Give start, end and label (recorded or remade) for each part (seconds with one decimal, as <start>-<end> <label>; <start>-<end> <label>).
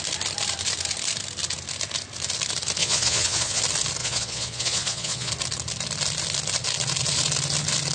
0.0-2.8 recorded; 2.8-3.6 remade; 3.6-4.0 recorded; 4.0-5.3 remade; 5.3-7.9 recorded